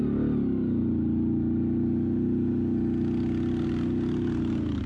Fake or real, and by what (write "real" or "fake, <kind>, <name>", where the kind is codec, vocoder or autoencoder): real